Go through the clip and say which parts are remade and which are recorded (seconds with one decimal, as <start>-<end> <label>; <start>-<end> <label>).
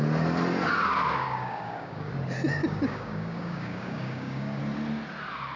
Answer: 0.0-1.2 recorded; 1.2-2.1 remade; 2.1-2.6 recorded; 2.6-4.6 remade; 4.6-5.6 recorded